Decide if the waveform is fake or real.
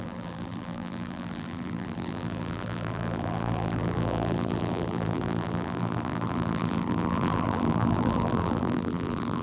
fake